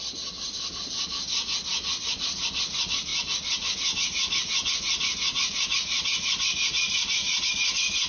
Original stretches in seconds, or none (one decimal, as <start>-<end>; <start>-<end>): 0.0-8.1